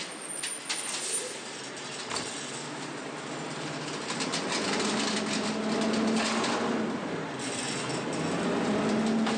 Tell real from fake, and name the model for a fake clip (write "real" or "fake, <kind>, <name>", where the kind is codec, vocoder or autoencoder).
real